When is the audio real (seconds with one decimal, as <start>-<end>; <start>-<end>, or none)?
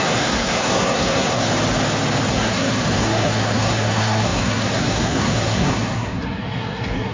1.5-2.3